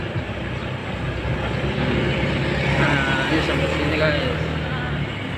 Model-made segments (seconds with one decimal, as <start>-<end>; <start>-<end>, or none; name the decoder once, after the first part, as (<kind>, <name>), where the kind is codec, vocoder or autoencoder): none